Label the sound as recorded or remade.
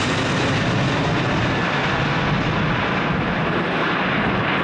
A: recorded